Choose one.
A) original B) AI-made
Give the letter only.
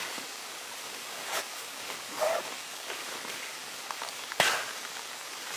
B